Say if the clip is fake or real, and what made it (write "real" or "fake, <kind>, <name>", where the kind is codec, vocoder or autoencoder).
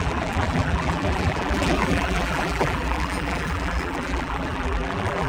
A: fake, vocoder, BigVGAN v2